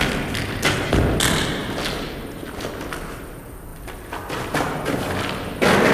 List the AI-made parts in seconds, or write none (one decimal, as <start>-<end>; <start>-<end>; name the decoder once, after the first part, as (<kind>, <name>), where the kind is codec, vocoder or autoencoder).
none

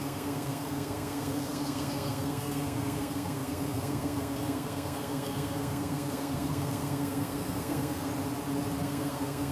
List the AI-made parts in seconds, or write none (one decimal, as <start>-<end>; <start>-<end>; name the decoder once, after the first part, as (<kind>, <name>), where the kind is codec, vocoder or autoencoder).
0.0-8.1 (codec, SNAC); 8.8-9.5

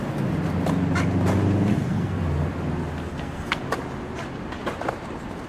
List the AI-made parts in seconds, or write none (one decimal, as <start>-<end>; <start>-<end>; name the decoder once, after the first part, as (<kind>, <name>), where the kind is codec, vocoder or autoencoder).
1.7-2.2 (codec, SNAC); 3.1-3.6